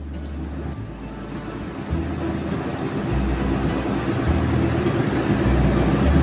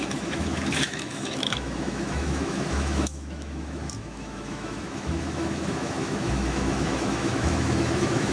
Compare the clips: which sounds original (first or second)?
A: first